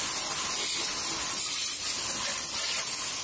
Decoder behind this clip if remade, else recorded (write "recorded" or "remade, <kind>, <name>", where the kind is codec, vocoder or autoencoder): recorded